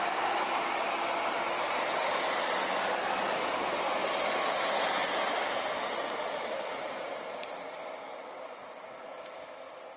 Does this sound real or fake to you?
real